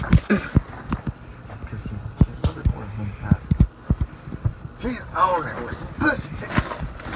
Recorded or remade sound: recorded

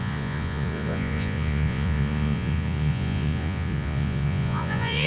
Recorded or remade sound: remade